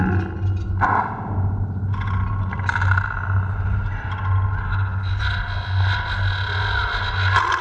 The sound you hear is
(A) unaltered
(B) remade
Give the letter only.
A